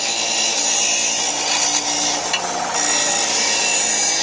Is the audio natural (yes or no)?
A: yes